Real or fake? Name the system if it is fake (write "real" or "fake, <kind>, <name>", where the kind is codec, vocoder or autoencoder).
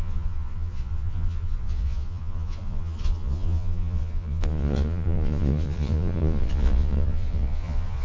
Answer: fake, vocoder, Vocos